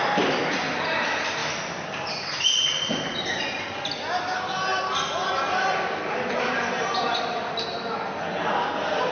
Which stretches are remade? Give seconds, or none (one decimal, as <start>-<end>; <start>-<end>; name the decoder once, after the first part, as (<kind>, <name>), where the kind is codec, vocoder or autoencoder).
none